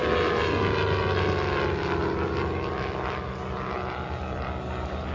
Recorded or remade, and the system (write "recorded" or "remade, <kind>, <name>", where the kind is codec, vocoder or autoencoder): recorded